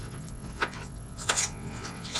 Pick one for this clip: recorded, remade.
remade